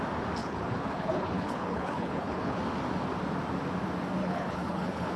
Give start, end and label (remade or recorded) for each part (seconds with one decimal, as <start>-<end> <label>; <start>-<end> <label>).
0.0-0.4 recorded; 0.4-2.6 remade; 2.6-4.2 recorded; 4.2-5.2 remade